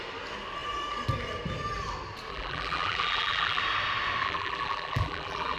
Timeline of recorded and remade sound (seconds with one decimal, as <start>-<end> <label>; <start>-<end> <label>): 0.0-2.3 recorded; 2.3-3.6 remade; 3.6-4.2 recorded; 4.2-5.6 remade